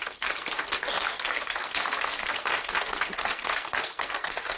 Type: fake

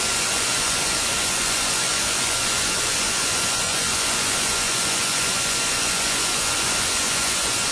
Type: fake